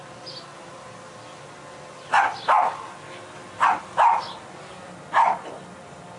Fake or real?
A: real